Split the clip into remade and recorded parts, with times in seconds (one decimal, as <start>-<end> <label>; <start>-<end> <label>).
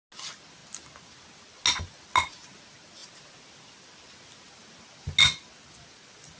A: 0.0-6.4 recorded